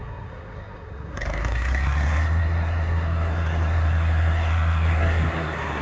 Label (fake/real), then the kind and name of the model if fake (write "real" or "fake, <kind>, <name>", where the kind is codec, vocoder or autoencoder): fake, codec, SNAC